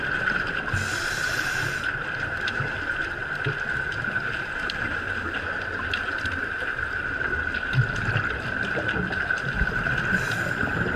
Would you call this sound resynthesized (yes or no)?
yes